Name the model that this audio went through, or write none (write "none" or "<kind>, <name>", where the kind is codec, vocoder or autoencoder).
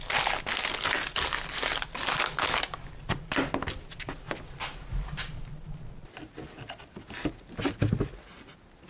none